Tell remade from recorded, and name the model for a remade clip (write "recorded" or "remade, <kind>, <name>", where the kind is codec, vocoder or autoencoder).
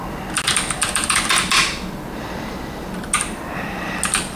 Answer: recorded